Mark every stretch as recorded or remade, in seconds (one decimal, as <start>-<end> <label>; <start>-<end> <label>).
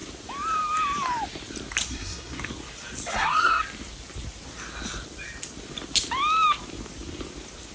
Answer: 0.0-1.9 recorded; 1.9-2.4 remade; 2.4-3.1 recorded; 3.1-3.6 remade; 3.6-7.7 recorded